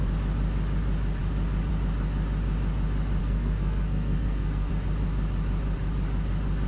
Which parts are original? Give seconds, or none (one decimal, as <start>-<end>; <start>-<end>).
0.0-3.2; 4.7-6.7